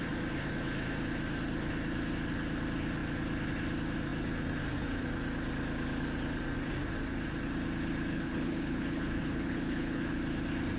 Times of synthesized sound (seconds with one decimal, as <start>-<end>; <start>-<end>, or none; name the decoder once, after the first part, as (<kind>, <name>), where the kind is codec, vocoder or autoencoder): 8.1-10.2 (codec, HILCodec)